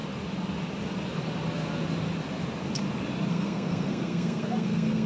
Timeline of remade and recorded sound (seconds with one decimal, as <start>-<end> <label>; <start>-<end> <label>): 0.0-3.3 recorded; 3.3-5.1 remade